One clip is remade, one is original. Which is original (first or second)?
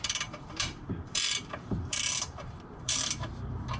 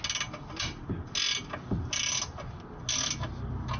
second